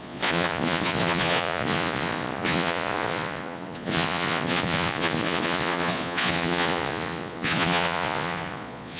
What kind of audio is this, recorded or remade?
remade